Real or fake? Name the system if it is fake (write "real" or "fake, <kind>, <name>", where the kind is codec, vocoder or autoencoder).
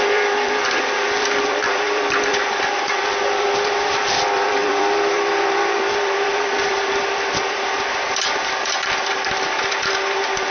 fake, vocoder, BigVGAN v2